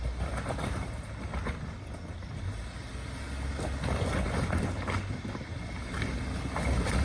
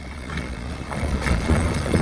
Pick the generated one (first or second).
second